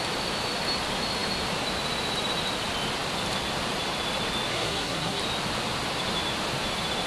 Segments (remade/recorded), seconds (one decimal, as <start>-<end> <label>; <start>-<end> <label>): 0.0-4.5 recorded; 4.5-5.2 remade; 5.2-7.1 recorded